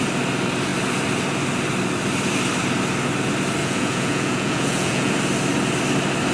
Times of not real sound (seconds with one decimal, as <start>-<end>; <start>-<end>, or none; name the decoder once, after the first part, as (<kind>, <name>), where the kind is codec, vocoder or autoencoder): 3.6-5.1 (vocoder, Vocos)